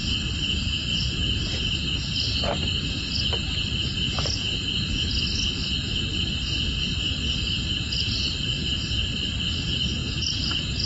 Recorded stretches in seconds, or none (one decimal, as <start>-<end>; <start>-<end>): 0.0-10.9